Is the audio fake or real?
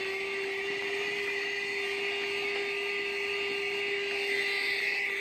real